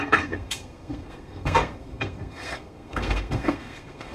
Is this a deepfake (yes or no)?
yes